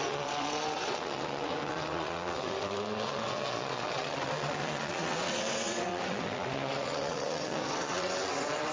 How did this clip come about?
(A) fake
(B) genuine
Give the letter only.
A